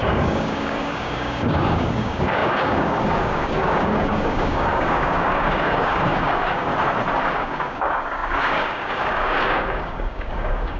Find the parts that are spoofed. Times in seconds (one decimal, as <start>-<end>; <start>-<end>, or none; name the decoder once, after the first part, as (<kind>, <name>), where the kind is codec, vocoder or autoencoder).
0.0-6.7 (codec, DAC); 7.2-10.8